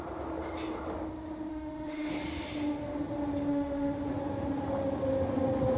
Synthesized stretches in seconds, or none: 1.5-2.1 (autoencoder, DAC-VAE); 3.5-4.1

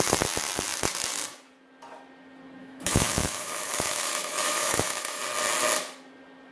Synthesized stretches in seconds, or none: 2.6-5.2 (autoencoder, DAC-VAE)